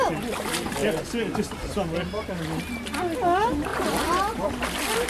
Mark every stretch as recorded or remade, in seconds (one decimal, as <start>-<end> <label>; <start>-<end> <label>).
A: 0.0-3.7 recorded; 3.7-4.5 remade; 4.5-5.1 recorded